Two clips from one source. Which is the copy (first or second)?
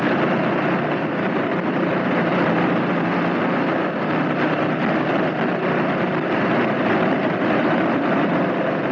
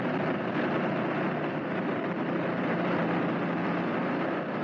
first